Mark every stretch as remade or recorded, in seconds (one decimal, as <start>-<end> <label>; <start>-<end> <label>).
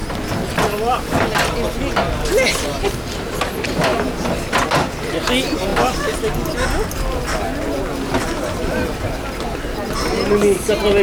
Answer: 0.0-11.0 recorded